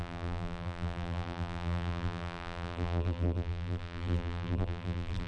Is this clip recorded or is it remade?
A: remade